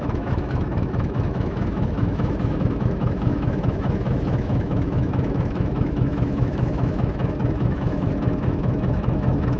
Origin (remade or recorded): remade